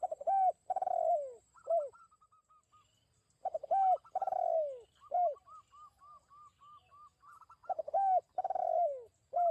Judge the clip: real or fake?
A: real